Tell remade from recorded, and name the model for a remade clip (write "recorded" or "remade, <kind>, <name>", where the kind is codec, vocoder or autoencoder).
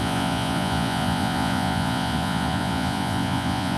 remade, vocoder, Vocos